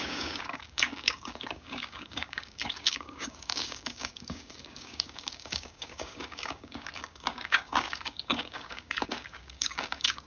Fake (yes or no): yes